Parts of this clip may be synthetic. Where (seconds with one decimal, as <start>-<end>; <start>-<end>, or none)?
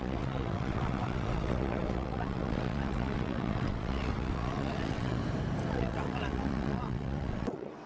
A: 0.0-5.2; 5.7-7.9